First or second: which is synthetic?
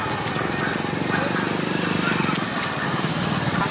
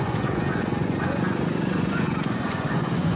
second